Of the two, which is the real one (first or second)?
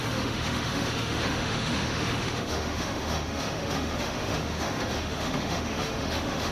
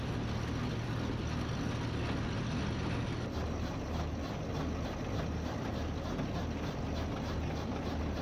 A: second